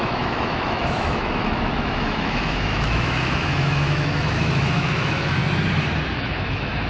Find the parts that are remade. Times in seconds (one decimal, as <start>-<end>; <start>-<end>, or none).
0.0-5.4; 6.1-6.9